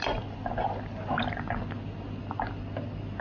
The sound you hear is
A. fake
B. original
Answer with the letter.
B